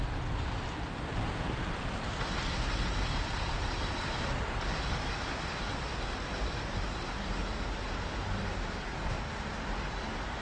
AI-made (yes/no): no